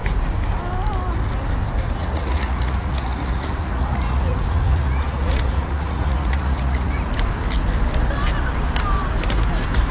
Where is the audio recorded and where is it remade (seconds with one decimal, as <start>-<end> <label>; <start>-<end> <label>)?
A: 0.0-2.0 recorded; 2.0-7.1 remade; 7.1-9.9 recorded